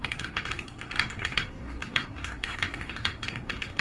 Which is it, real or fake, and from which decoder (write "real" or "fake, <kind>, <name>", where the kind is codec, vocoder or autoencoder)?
fake, codec, SNAC